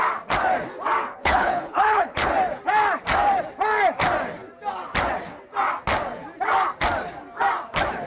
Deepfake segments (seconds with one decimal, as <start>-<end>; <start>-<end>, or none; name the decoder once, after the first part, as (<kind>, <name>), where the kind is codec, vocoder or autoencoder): 1.1-2.3 (codec, HILCodec)